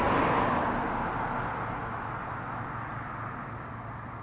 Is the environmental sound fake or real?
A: real